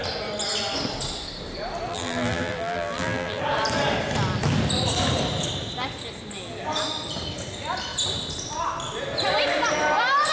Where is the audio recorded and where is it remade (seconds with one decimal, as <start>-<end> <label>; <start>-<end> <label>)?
0.0-1.9 recorded; 1.9-3.4 remade; 3.4-10.3 recorded

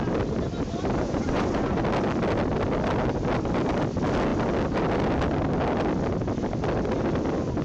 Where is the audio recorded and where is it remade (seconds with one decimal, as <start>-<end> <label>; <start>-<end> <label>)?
0.0-1.0 recorded; 1.0-1.8 remade; 1.8-7.6 recorded

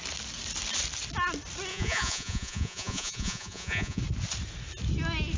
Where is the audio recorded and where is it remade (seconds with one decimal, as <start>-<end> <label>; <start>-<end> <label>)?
0.0-1.7 recorded; 1.7-4.0 remade; 4.0-5.4 recorded

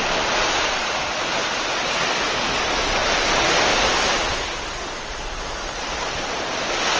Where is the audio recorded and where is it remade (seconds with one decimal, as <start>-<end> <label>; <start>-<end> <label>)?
0.0-7.0 recorded

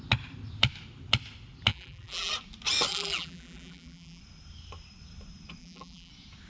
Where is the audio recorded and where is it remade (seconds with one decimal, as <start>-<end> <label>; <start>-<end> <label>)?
0.0-1.7 recorded; 1.7-2.3 remade; 2.3-2.9 recorded; 2.9-4.2 remade; 4.2-5.6 recorded; 5.6-6.1 remade; 6.1-6.5 recorded

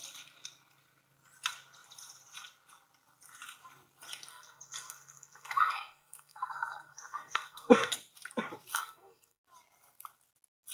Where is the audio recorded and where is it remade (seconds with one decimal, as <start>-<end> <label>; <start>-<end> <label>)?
0.0-4.3 recorded; 4.3-7.9 remade; 7.9-8.7 recorded; 8.7-9.4 remade; 9.4-10.7 recorded